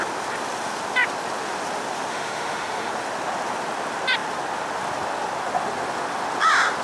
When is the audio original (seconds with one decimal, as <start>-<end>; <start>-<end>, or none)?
0.0-2.1; 2.9-6.8